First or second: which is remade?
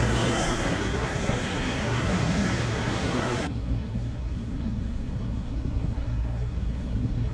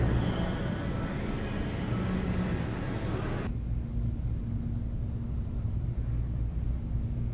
first